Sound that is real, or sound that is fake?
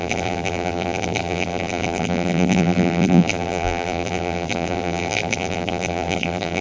fake